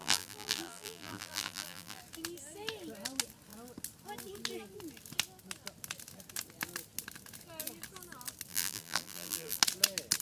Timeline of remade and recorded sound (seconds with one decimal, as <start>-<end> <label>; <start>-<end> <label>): 0.0-2.0 remade; 2.0-8.5 recorded; 8.5-9.6 remade; 9.6-10.2 recorded